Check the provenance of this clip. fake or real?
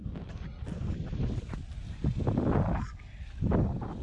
real